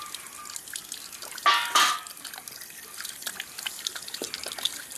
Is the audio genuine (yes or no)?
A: yes